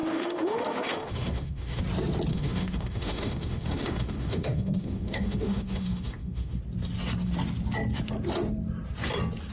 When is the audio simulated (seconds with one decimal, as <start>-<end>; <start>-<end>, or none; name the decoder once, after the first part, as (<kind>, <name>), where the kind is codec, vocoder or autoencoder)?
0.0-1.8 (autoencoder, DAC-VAE); 2.3-6.6

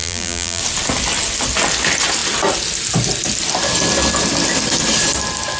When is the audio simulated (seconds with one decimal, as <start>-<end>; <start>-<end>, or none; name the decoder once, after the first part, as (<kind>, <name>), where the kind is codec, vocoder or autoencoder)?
0.0-0.6 (vocoder, BigVGAN v2)